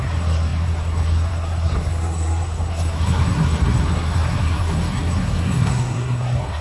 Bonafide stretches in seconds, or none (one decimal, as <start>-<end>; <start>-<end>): none